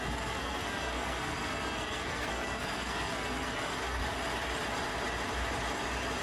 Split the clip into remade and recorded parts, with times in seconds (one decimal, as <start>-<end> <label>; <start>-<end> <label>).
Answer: 0.0-4.0 remade; 4.0-6.2 recorded